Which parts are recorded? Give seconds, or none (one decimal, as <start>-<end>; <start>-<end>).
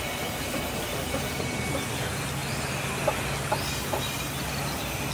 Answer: 0.0-5.1